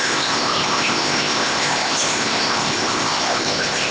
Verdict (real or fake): fake